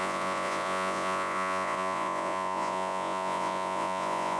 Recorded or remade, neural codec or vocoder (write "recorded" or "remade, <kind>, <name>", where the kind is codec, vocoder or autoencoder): remade, vocoder, Vocos